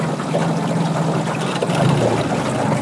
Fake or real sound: real